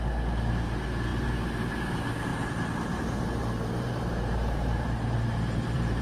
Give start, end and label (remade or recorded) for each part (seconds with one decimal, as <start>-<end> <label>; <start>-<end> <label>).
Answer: 0.0-2.3 recorded; 2.3-6.0 remade